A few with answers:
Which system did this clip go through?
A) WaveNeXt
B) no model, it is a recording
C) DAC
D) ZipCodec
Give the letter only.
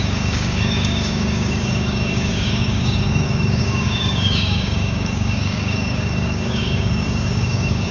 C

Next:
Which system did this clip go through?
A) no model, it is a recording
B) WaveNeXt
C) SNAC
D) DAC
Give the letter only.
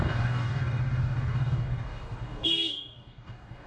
D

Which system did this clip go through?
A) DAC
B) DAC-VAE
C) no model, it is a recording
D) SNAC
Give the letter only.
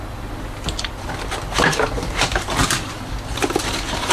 C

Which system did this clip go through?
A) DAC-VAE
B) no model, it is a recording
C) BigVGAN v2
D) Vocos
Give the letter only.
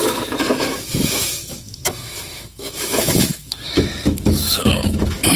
A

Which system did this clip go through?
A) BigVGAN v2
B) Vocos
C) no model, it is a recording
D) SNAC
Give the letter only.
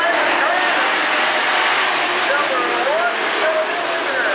C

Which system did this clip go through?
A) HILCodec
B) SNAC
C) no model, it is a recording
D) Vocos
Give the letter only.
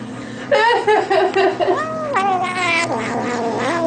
C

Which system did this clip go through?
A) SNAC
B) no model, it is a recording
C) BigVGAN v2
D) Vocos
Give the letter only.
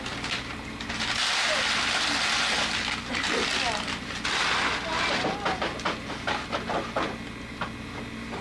B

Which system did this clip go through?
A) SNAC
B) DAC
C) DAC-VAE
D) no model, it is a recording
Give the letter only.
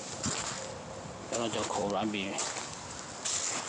D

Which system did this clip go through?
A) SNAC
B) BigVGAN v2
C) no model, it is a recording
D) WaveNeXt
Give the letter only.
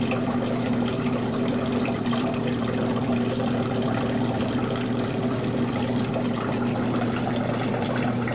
B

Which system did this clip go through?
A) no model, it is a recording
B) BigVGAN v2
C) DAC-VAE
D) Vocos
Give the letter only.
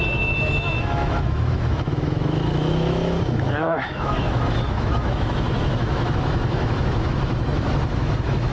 C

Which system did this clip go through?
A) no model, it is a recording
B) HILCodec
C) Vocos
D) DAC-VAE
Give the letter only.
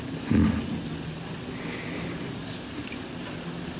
A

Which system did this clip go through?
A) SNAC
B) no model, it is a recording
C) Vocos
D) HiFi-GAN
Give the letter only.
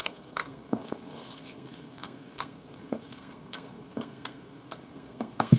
A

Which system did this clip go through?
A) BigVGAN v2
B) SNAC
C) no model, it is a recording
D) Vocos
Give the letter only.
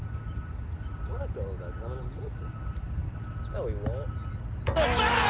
C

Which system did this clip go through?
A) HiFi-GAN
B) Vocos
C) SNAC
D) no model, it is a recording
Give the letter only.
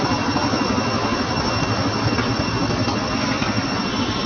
D